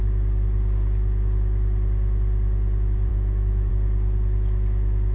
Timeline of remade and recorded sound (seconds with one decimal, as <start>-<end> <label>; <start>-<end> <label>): 0.0-3.1 recorded; 3.1-3.7 remade; 3.7-5.1 recorded